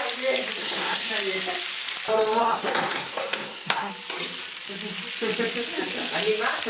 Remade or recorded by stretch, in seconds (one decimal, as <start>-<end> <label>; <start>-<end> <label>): 0.0-0.6 recorded; 0.6-1.1 remade; 1.1-2.4 recorded; 2.4-3.9 remade; 3.9-6.7 recorded